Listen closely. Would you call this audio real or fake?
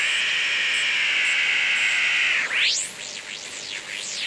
real